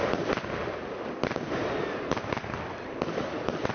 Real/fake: real